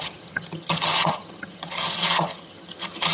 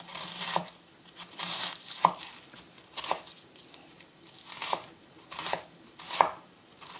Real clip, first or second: second